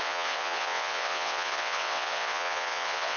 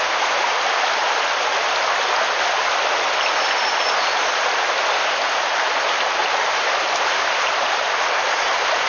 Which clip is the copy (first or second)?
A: first